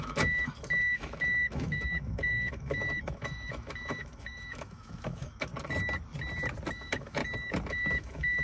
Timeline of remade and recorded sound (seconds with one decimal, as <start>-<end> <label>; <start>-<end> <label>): 0.0-5.5 remade; 5.5-6.7 recorded; 6.7-7.2 remade; 7.2-7.7 recorded; 7.7-8.4 remade